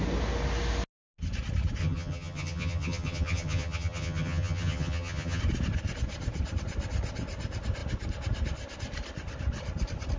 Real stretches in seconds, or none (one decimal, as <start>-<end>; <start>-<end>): 0.0-1.8; 5.4-10.2